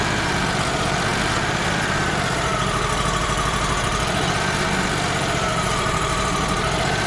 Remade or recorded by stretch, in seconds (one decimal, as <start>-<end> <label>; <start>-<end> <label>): 0.0-7.1 remade